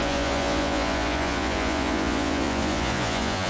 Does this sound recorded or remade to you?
remade